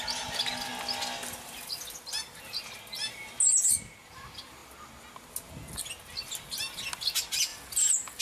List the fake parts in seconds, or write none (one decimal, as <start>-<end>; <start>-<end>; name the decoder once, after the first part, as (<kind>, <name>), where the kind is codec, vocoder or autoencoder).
none